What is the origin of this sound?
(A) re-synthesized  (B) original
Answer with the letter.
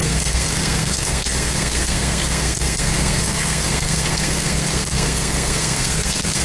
A